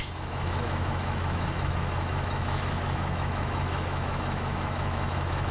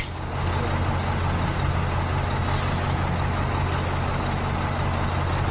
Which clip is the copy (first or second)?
first